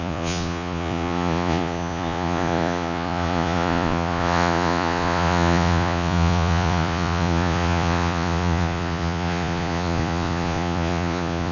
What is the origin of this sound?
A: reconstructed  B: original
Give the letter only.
A